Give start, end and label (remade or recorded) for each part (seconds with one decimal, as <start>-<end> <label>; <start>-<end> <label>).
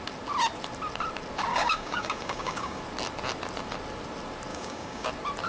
0.0-1.5 recorded; 1.5-2.8 remade; 2.8-4.5 recorded; 4.5-5.1 remade; 5.1-5.5 recorded